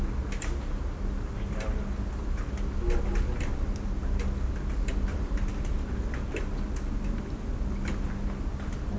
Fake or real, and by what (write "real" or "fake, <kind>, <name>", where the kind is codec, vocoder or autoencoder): real